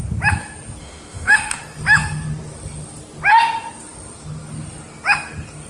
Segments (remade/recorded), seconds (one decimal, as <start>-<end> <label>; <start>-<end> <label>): 0.0-0.8 recorded; 0.8-1.6 remade; 1.6-5.7 recorded